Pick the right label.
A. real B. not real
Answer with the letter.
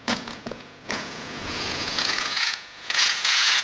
B